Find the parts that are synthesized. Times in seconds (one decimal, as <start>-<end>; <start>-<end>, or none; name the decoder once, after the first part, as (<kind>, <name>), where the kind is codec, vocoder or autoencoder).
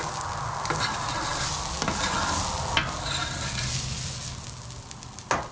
none